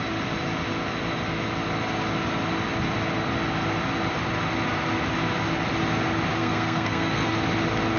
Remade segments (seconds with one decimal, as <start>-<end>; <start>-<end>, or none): 6.4-7.3